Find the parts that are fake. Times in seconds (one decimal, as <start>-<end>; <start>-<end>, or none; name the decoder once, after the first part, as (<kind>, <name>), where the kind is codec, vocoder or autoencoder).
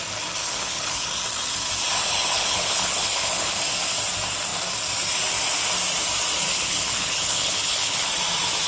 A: 0.4-1.1 (codec, HILCodec); 2.0-3.6; 6.5-8.1